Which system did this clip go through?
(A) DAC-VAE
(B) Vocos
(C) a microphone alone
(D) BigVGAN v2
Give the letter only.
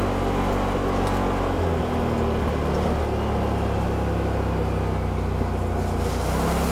C